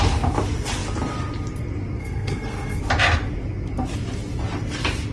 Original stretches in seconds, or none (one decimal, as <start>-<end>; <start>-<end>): 0.0-2.0; 2.8-5.1